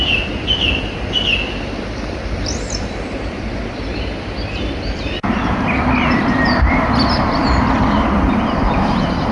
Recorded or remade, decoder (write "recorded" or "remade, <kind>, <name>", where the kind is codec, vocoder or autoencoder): remade, vocoder, BigVGAN v2